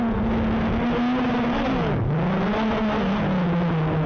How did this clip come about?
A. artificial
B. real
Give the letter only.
B